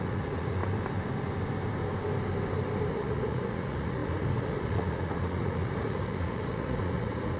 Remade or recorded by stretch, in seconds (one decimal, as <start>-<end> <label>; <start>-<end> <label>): 0.0-0.6 remade; 0.6-2.9 recorded; 2.9-7.4 remade

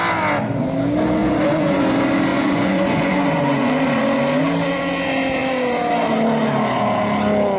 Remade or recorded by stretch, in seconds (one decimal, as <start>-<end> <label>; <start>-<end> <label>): 0.0-1.2 recorded; 1.2-1.8 remade; 1.8-2.3 recorded; 2.3-3.7 remade; 3.7-7.6 recorded

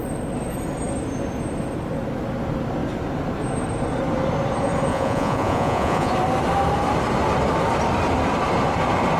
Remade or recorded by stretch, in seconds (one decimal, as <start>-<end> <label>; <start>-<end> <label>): 0.0-4.9 recorded; 4.9-6.1 remade; 6.1-9.2 recorded

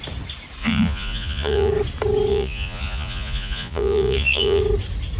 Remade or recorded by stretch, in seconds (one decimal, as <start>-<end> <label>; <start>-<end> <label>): 0.0-0.6 recorded; 0.6-1.7 remade; 1.7-2.3 recorded; 2.3-4.6 remade; 4.6-5.2 recorded

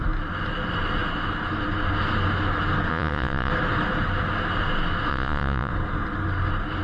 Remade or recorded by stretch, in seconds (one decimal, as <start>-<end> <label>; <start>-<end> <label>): 0.0-2.9 recorded; 2.9-3.5 remade; 3.5-5.1 recorded; 5.1-5.7 remade; 5.7-6.8 recorded